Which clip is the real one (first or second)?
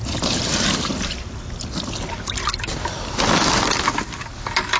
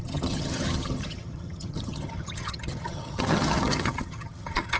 first